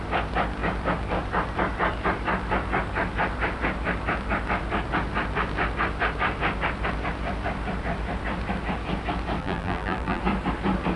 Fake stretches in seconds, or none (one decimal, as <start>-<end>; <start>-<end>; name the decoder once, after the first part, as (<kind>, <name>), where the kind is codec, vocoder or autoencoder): 9.4-10.2 (vocoder, BigVGAN v2)